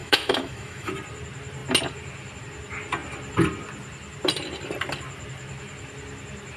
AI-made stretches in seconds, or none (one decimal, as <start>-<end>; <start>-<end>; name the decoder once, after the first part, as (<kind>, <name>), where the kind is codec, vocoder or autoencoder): 0.0-0.9 (autoencoder, DAC-VAE)